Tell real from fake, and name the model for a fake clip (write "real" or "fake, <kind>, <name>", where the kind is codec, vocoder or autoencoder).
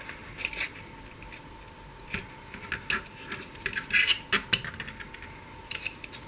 real